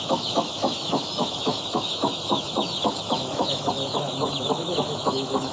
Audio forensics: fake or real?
fake